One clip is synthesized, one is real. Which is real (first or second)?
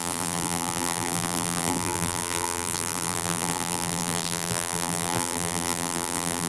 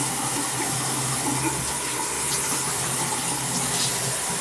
second